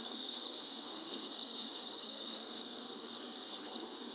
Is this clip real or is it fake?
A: fake